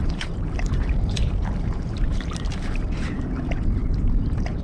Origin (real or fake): fake